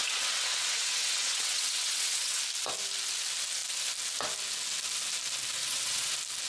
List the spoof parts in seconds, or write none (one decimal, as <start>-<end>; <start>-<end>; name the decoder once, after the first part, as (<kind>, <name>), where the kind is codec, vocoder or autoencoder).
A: 0.0-2.4 (vocoder, WaveNeXt); 5.6-6.1